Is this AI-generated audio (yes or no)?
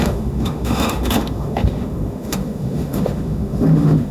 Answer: yes